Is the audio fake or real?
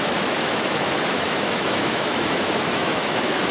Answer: fake